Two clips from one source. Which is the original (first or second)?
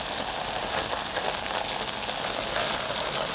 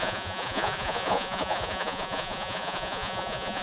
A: first